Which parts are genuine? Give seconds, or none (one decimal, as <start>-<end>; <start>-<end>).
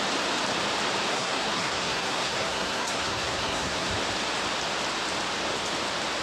0.0-1.1; 3.9-6.2